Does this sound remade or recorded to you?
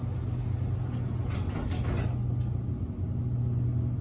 recorded